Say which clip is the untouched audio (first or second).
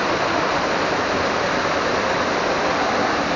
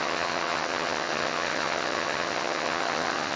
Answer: first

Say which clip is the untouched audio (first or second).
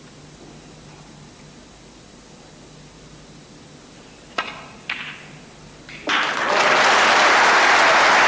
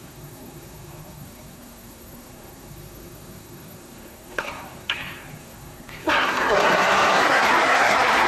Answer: first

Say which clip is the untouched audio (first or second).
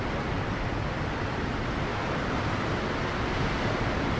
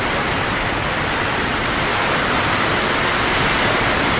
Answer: first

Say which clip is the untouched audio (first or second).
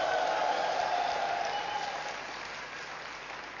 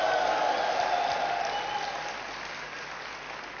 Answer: second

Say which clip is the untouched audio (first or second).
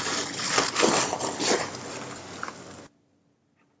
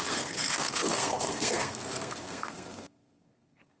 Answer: first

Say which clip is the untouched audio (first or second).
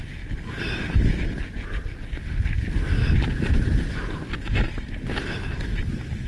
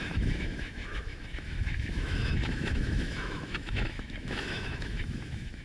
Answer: first